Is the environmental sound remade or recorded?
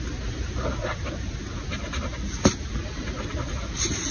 recorded